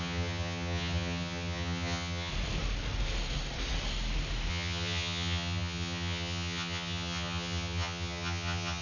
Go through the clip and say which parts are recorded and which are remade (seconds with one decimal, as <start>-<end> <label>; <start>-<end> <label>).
0.0-2.3 remade; 2.3-4.5 recorded; 4.5-8.8 remade